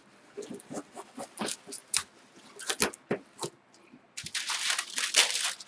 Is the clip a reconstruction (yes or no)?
no